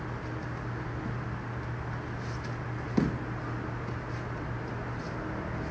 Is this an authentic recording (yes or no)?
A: yes